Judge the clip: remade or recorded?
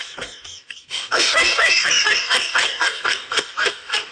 remade